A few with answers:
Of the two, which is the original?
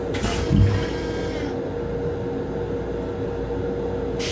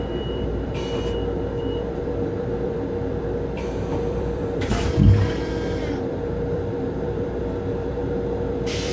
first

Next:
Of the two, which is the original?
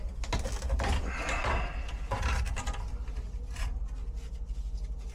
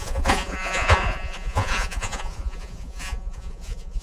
first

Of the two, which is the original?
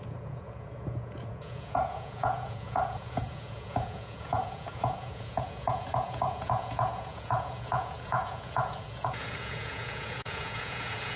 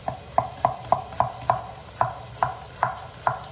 second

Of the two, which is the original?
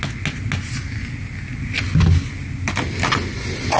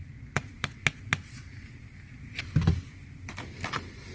first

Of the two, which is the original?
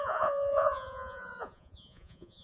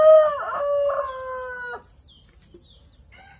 second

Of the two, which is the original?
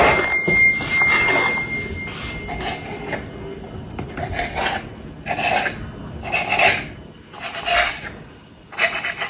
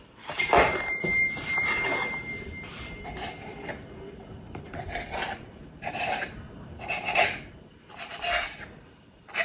first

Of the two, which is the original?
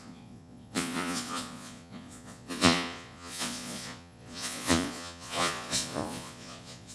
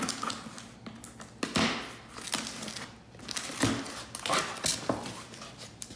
second